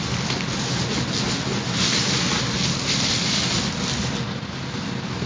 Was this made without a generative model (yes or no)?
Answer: yes